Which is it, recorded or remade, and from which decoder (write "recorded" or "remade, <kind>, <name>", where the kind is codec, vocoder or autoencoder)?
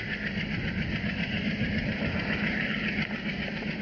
recorded